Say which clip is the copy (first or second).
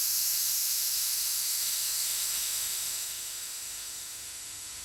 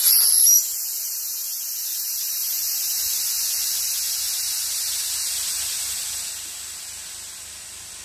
first